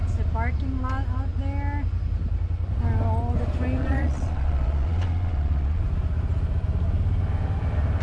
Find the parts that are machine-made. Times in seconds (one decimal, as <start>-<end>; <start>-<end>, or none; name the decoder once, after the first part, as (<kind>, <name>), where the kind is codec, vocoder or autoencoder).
3.8-5.8 (vocoder, Vocos)